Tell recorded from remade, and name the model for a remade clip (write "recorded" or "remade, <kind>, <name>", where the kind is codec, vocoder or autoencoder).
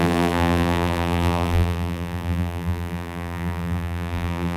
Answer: remade, vocoder, BigVGAN v2